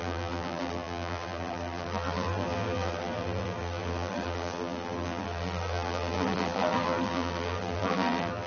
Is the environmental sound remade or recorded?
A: remade